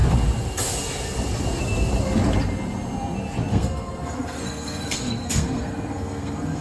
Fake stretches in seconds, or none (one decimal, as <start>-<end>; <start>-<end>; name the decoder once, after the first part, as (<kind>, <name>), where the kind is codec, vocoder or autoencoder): 3.5-6.6 (codec, SNAC)